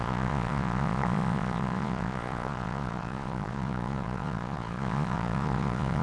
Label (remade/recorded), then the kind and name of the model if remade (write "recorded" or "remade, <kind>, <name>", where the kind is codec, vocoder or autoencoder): remade, vocoder, Vocos